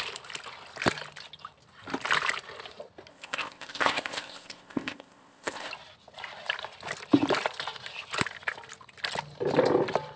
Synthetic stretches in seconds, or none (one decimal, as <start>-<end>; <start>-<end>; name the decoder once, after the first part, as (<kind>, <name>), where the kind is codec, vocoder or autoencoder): 3.1-5.7 (codec, ZipCodec)